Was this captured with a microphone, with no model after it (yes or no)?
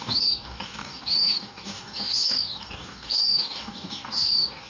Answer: no